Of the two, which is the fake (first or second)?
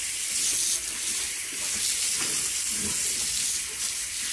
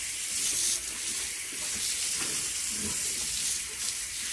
second